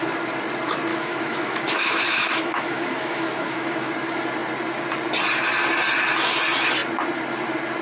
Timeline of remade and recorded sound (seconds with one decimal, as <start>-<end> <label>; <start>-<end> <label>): 0.0-0.9 recorded; 0.9-3.9 remade; 3.9-7.8 recorded